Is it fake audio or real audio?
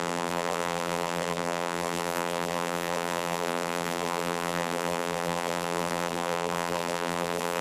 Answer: fake